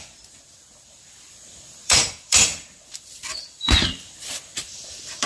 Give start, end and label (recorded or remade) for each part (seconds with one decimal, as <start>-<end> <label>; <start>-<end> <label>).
0.0-5.3 remade